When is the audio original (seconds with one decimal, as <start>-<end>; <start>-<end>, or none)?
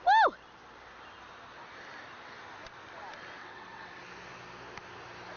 0.0-3.4; 4.0-5.4